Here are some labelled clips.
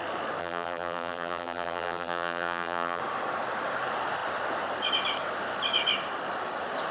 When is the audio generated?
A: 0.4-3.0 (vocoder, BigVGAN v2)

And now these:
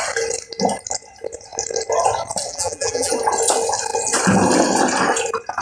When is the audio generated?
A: 2.5-3.1 (vocoder, BigVGAN v2)

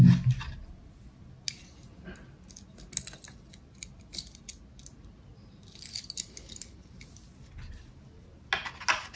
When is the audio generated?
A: none

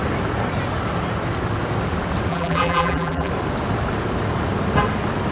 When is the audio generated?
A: 2.3-3.3 (vocoder, BigVGAN v2)

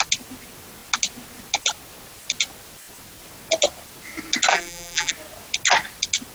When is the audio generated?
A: 4.5-5.1 (vocoder, BigVGAN v2)

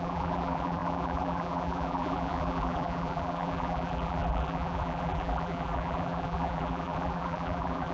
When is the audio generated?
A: 0.0-7.9 (vocoder, BigVGAN v2)

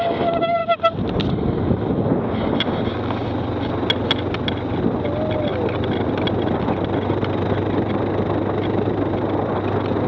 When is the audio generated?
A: none